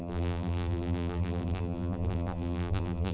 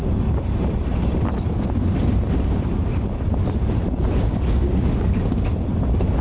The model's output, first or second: first